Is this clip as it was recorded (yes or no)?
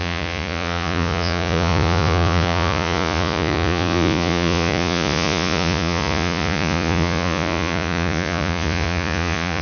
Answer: no